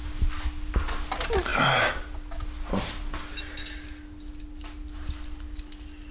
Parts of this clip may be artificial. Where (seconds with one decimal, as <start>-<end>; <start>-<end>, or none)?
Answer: none